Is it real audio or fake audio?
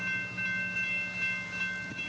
real